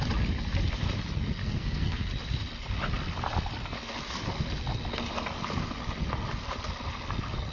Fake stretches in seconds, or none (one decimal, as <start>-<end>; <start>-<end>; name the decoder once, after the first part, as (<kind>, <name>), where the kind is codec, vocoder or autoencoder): 1.4-2.1 (codec, SNAC)